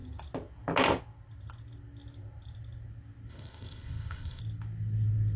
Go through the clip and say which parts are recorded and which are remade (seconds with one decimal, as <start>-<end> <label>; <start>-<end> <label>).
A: 0.0-3.3 recorded; 3.3-4.4 remade; 4.4-5.4 recorded